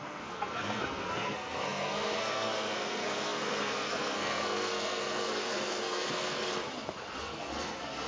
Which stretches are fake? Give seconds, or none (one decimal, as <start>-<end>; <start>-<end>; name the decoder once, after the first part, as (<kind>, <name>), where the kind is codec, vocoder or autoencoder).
0.0-6.5 (codec, SNAC); 7.2-8.1